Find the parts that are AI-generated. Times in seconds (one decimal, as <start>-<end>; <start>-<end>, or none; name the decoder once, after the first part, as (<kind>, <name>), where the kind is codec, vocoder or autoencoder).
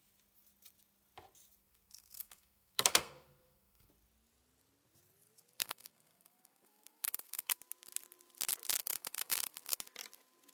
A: 1.6-3.9 (codec, SNAC); 5.6-7.6; 8.8-9.8